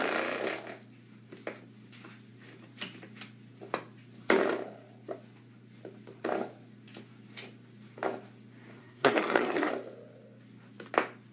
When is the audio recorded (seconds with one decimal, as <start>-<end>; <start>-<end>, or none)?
0.0-8.8; 9.7-11.3